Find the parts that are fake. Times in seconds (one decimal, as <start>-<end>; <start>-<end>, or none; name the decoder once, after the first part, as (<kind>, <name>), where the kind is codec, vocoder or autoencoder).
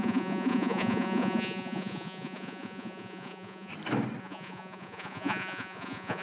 0.0-3.7 (vocoder, Vocos); 4.2-6.2